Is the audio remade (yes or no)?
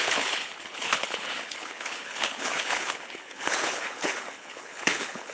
yes